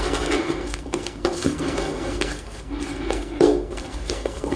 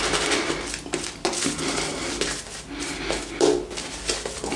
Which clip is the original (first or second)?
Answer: second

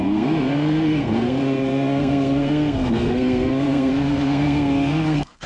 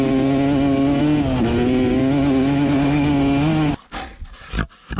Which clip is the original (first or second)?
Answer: second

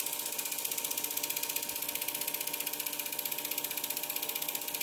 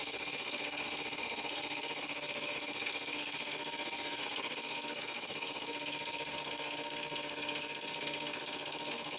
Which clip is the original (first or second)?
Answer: first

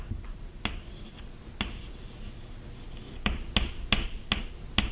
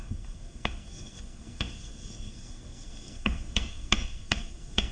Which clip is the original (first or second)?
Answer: first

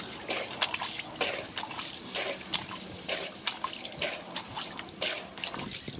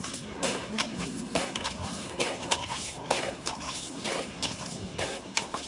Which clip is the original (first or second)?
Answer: first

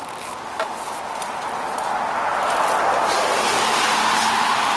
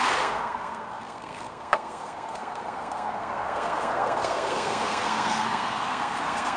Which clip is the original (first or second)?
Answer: first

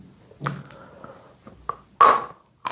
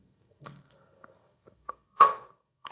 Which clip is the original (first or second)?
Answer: first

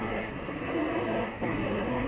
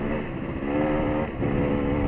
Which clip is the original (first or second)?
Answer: second